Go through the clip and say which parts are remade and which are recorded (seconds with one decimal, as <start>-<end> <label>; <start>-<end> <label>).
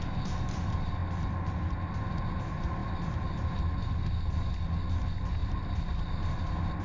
0.0-2.8 recorded; 2.8-3.5 remade; 3.5-5.4 recorded; 5.4-6.8 remade